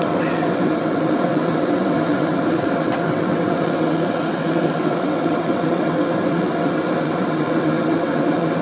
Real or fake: fake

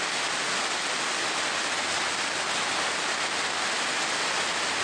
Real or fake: real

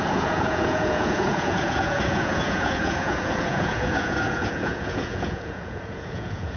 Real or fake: fake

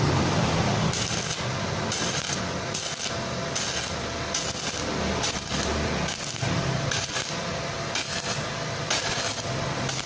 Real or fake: real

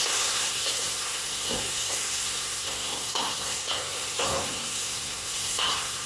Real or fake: fake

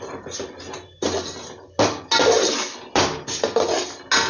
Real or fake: real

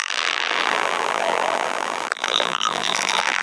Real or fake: fake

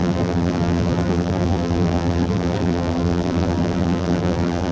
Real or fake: fake